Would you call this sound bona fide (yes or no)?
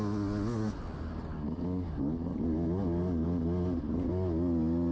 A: yes